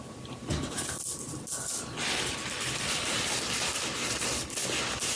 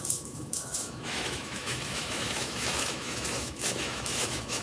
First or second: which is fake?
second